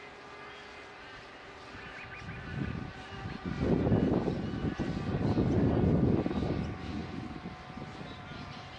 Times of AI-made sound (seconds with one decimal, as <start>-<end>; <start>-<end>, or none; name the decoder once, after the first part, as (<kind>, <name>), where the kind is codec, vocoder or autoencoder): none